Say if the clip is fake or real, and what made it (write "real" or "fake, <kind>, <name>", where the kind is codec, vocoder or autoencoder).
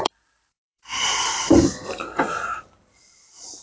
fake, vocoder, BigVGAN v2